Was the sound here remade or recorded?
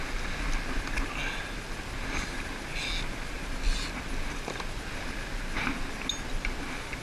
recorded